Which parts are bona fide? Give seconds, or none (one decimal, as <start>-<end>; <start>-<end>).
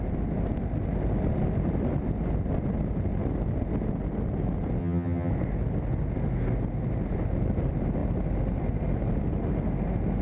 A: 0.0-4.8; 5.3-10.2